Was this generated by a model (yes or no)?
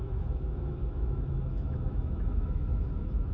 yes